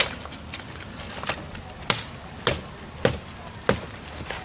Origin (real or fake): real